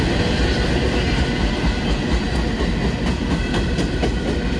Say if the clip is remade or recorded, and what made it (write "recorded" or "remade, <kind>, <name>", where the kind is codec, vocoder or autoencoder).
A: recorded